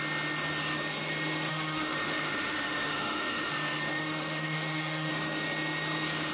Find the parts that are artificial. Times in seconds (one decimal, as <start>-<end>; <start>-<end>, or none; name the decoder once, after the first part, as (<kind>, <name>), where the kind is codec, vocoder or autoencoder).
1.5-3.5 (autoencoder, DAC-VAE); 3.9-5.1